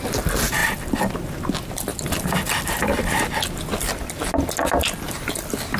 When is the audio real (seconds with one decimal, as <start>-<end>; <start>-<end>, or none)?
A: 0.0-0.6; 4.1-5.8